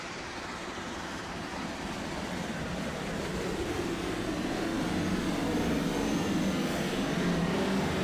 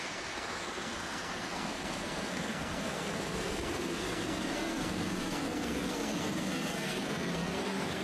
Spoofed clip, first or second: second